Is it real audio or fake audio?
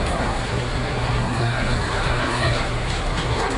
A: fake